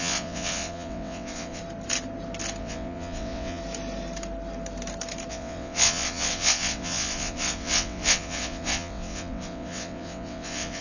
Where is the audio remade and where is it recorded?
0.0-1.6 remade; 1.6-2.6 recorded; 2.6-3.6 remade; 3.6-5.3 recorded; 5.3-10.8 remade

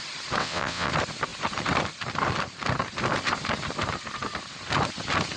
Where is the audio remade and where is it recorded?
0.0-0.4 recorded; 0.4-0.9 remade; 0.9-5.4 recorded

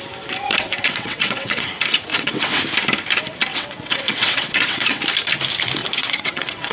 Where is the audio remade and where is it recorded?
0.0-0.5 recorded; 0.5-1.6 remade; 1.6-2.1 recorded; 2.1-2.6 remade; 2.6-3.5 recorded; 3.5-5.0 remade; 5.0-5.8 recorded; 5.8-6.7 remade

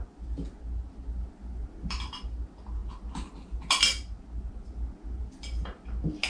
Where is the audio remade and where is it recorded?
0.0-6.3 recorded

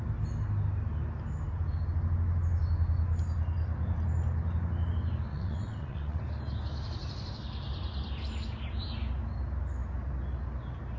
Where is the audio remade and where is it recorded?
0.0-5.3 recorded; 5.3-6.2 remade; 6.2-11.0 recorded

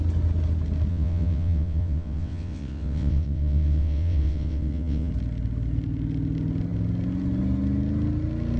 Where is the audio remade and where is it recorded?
0.0-0.9 recorded; 0.9-5.1 remade; 5.1-8.6 recorded

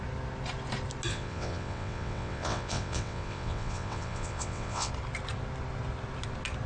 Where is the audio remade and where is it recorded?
0.0-1.1 recorded; 1.1-4.9 remade; 4.9-6.7 recorded